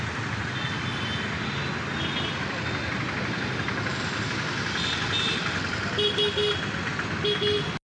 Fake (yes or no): no